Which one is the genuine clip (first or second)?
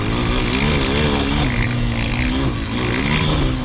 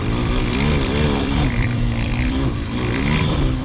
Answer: first